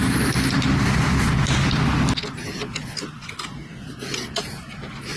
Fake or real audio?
real